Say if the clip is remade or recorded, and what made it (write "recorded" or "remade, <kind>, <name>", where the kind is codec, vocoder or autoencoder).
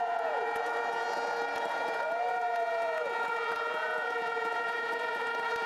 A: remade, vocoder, Vocos